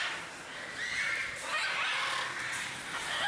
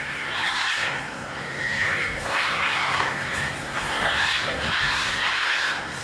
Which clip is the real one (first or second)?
first